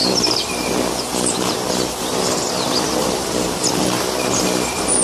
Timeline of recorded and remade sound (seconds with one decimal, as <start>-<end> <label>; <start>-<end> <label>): 0.0-3.0 recorded; 3.0-3.7 remade; 3.7-5.0 recorded